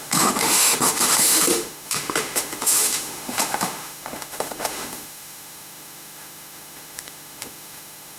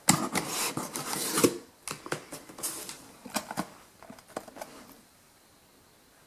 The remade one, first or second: first